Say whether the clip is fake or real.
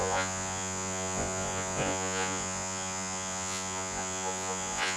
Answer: fake